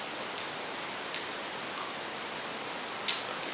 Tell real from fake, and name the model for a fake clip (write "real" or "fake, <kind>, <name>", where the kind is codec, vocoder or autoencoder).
real